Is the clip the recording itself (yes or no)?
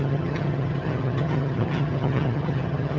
no